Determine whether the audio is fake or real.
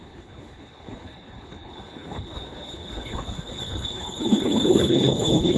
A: fake